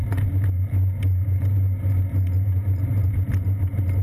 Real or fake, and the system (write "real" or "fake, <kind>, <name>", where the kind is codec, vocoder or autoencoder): real